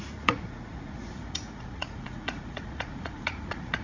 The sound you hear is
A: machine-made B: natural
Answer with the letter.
A